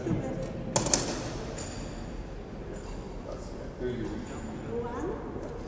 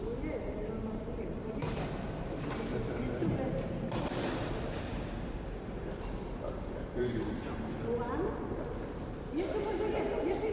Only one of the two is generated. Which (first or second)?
second